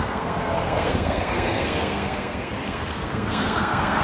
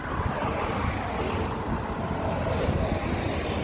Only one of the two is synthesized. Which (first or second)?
first